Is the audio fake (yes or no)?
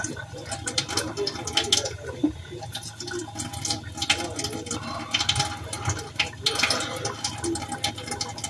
no